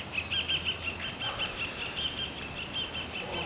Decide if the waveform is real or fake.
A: real